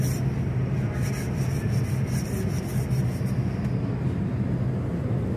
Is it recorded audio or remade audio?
recorded